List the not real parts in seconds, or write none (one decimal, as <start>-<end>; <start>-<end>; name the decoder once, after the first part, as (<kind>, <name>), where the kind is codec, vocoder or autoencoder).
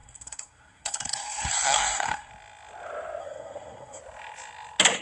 0.0-2.3 (codec, SNAC); 3.2-4.0